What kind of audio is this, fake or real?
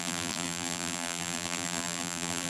fake